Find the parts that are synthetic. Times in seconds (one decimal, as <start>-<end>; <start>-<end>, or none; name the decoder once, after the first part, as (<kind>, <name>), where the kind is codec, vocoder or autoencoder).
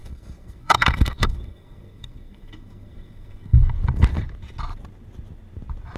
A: 0.0-3.6 (codec, SNAC)